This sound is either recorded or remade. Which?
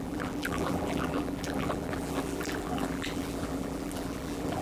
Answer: remade